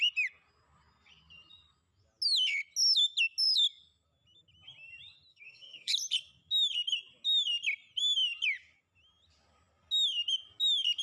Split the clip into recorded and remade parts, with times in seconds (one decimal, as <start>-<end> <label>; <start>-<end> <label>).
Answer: 0.0-5.3 recorded; 5.3-5.9 remade; 5.9-11.0 recorded